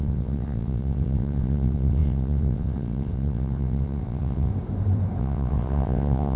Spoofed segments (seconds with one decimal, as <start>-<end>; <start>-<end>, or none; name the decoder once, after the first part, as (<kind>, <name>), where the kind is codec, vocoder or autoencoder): 0.0-4.5 (vocoder, WaveNeXt); 5.2-6.4